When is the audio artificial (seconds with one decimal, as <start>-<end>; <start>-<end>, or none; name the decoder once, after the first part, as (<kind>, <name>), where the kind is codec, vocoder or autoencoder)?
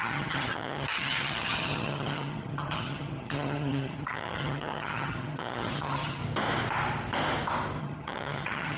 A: 0.0-6.2 (vocoder, HiFi-GAN); 7.8-8.8